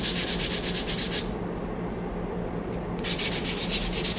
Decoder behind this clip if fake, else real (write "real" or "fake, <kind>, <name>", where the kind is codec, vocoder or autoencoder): real